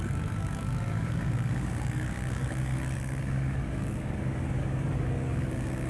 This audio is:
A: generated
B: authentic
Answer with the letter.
A